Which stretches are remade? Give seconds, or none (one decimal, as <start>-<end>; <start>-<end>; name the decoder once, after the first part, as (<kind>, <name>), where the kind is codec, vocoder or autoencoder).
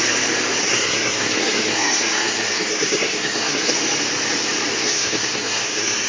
0.6-3.7 (codec, SNAC); 4.8-6.1